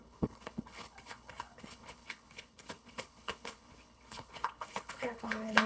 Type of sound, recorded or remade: remade